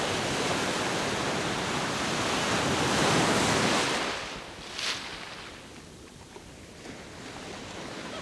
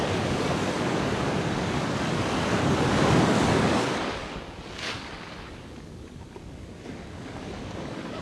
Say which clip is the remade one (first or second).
second